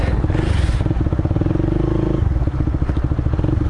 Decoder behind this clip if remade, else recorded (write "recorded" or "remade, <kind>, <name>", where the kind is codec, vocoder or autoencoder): recorded